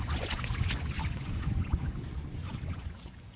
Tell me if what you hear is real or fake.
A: fake